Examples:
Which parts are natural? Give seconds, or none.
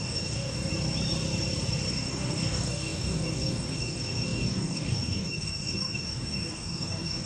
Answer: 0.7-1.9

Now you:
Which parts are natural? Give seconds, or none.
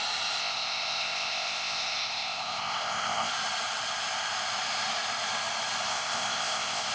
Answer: 0.0-0.4; 3.3-5.9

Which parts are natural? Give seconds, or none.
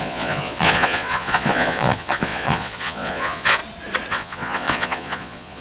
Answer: 3.6-4.1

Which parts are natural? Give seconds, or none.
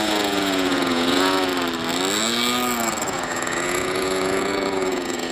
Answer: 1.5-2.9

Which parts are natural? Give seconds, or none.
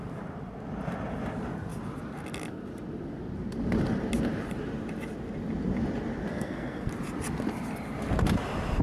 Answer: 0.0-6.3; 6.9-8.8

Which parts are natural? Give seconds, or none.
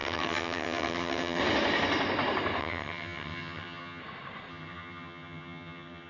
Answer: 1.4-2.6; 4.0-4.5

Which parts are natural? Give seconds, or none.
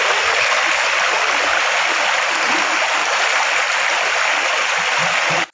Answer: 0.0-3.0; 3.6-5.5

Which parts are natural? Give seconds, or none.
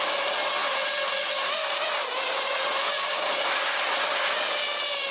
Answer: 0.0-5.1